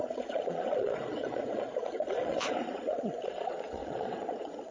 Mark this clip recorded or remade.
remade